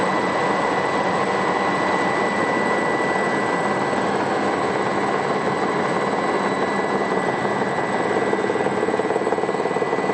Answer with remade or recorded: recorded